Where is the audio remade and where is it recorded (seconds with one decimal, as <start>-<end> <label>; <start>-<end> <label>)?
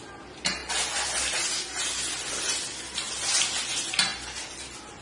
0.0-5.0 recorded